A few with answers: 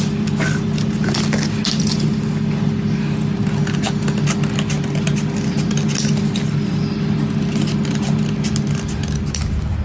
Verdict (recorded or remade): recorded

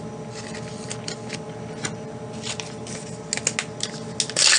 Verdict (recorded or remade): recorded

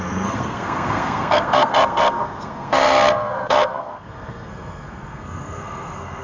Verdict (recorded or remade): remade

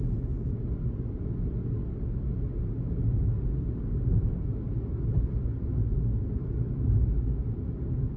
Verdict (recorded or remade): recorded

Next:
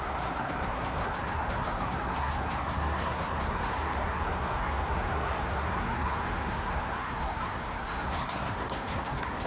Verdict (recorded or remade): remade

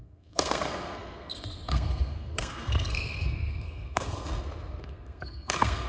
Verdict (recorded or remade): remade